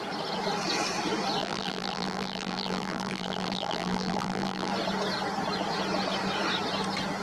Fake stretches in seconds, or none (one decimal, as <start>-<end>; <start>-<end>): 1.4-4.7